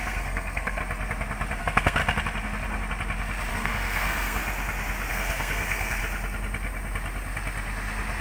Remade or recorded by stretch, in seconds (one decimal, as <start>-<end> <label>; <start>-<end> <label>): 0.0-0.8 remade; 0.8-1.6 recorded; 1.6-2.0 remade; 2.0-3.5 recorded; 3.5-4.4 remade; 4.4-5.1 recorded; 5.1-6.0 remade; 6.0-8.2 recorded